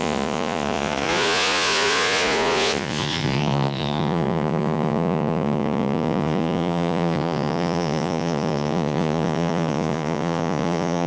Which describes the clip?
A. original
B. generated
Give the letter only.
B